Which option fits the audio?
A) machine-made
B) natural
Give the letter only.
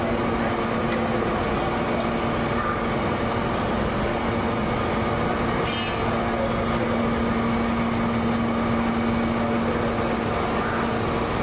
B